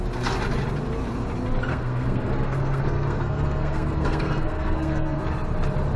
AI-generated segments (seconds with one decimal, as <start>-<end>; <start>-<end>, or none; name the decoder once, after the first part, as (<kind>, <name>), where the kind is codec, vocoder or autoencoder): 1.7-5.2 (codec, SNAC)